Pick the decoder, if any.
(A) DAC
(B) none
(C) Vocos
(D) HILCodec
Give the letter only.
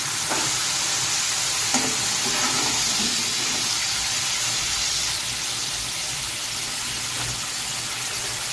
B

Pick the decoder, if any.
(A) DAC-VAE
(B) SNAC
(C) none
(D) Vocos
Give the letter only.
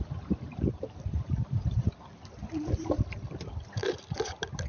C